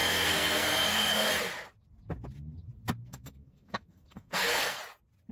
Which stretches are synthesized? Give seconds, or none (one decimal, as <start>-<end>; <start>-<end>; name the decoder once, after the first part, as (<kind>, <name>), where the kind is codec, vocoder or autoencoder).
0.0-1.3 (codec, SNAC); 3.0-4.8